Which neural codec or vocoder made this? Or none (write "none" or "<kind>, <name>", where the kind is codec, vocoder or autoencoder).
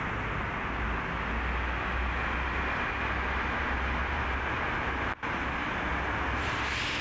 none